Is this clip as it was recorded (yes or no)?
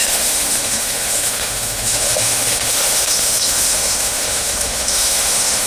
no